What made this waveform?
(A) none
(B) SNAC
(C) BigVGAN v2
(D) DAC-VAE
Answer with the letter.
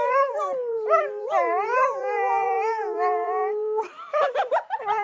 C